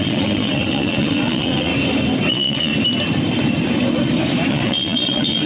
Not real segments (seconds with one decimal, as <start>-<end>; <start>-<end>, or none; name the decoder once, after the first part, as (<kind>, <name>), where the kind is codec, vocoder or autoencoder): 0.0-1.7 (vocoder, WaveNeXt); 2.3-2.7; 4.5-5.5

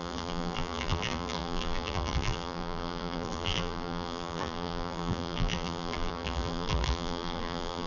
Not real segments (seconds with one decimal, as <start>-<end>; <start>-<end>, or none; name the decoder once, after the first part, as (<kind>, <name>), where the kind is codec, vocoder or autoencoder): 0.0-7.9 (vocoder, BigVGAN v2)

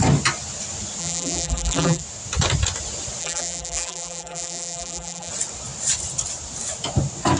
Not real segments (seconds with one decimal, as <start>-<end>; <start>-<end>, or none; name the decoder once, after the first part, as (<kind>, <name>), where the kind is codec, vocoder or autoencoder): 1.0-2.0 (vocoder, BigVGAN v2); 3.2-5.3

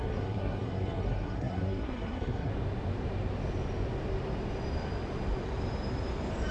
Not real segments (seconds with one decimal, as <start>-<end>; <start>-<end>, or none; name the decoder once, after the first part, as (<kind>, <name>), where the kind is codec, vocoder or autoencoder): 0.0-2.5 (codec, SNAC)

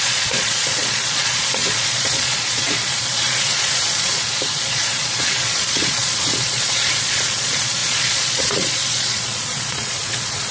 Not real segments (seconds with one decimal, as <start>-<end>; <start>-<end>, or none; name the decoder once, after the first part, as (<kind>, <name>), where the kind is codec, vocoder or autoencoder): 0.0-10.5 (vocoder, Vocos)